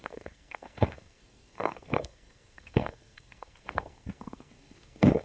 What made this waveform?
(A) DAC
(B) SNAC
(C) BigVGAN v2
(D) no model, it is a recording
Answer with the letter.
B